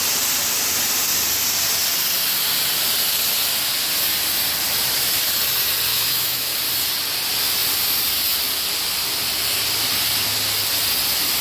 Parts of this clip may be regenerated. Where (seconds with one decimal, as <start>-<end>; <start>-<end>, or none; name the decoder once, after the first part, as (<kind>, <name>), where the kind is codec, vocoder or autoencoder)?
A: 5.9-6.5 (autoencoder, DAC-VAE)